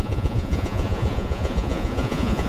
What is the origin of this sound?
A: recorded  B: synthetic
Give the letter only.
B